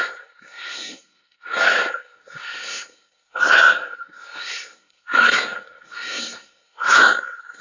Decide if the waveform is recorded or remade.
remade